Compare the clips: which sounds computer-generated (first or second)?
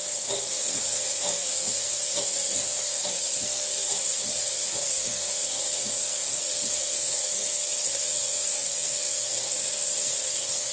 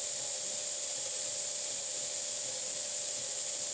first